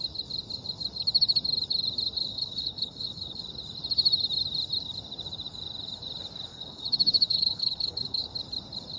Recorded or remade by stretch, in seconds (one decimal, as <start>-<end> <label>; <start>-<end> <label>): 0.0-2.3 recorded; 2.3-3.4 remade; 3.4-6.5 recorded; 6.5-8.2 remade; 8.2-9.0 recorded